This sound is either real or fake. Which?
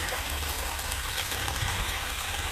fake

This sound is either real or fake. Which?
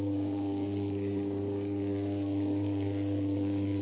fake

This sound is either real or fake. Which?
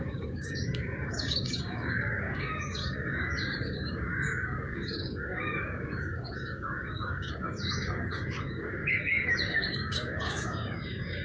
fake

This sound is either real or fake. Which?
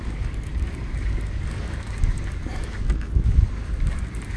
fake